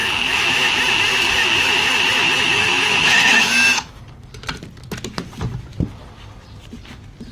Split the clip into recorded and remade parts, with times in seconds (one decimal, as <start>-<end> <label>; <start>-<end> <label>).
0.0-0.7 remade; 0.7-1.1 recorded; 1.1-4.0 remade; 4.0-7.3 recorded